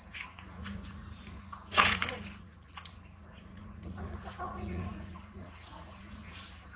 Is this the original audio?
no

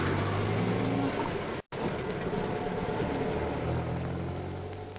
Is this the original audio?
yes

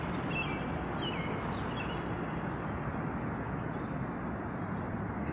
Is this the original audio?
yes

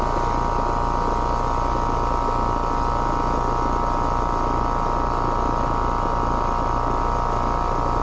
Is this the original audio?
yes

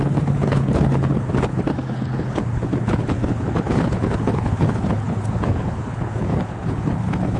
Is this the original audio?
no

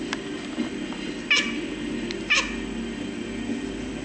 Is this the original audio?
yes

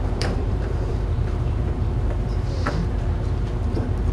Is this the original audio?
no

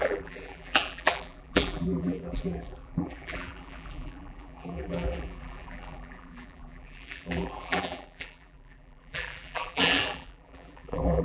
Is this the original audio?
no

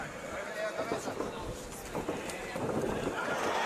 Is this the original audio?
yes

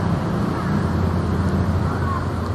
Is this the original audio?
yes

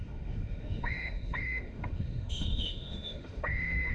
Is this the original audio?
no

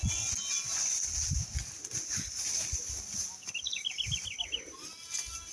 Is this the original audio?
yes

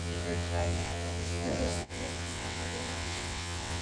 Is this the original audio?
no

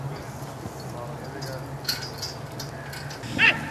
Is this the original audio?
yes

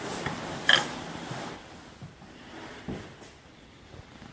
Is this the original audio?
yes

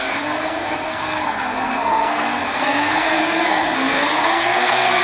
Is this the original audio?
no